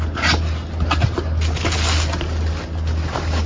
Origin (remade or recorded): recorded